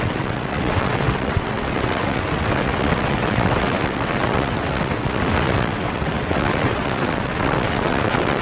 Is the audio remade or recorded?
remade